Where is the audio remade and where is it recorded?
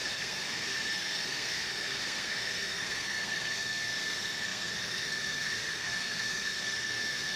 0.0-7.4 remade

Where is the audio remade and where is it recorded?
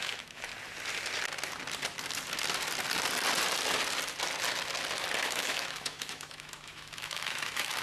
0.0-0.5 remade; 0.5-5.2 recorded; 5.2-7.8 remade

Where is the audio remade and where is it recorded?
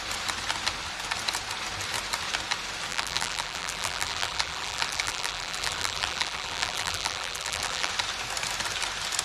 0.0-2.9 recorded; 2.9-7.9 remade; 7.9-9.2 recorded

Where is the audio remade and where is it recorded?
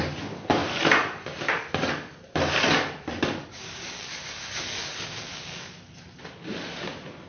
0.0-3.4 recorded; 3.4-5.7 remade; 5.7-7.3 recorded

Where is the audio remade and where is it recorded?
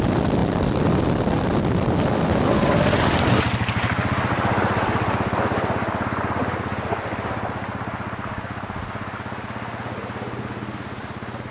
0.0-11.5 recorded